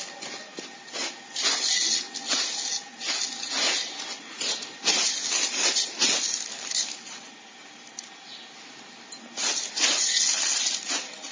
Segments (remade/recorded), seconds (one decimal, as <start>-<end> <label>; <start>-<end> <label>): 0.0-11.3 recorded